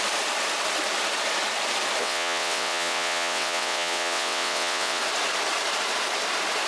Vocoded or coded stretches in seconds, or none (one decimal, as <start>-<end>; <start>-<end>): 2.0-5.0